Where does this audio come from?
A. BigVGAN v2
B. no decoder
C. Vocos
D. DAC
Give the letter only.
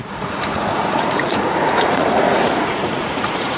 C